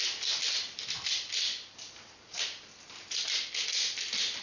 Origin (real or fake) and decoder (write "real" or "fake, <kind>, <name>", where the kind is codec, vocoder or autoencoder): real